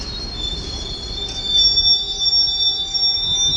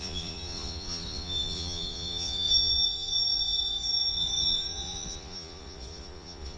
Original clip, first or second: first